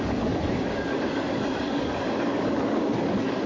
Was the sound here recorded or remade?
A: remade